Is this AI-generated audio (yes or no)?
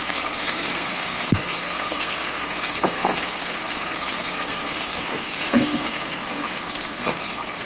yes